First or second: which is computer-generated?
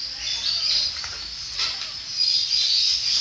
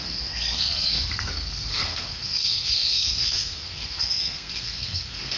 second